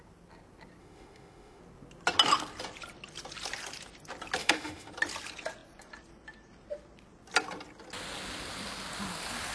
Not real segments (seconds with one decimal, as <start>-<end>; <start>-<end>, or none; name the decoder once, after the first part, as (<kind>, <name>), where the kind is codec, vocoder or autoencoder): 0.8-1.6 (autoencoder, DAC-VAE); 4.4-4.9